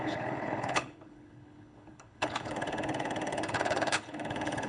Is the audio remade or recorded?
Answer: remade